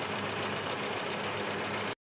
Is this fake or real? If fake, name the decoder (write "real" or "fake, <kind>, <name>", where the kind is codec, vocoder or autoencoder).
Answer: real